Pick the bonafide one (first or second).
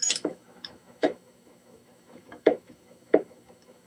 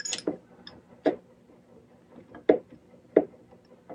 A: second